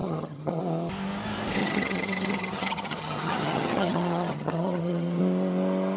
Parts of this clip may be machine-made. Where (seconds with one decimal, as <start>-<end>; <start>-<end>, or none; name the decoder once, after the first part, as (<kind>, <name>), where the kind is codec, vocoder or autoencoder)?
0.0-0.6 (vocoder, HiFi-GAN); 1.6-5.2